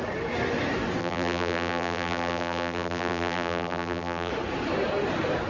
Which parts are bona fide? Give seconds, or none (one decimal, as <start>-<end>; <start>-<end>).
0.0-1.0; 4.3-5.5